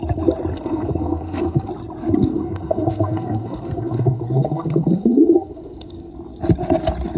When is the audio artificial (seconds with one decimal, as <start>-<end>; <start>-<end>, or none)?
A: 0.5-1.7; 2.2-6.1